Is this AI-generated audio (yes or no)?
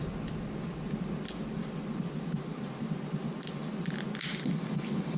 no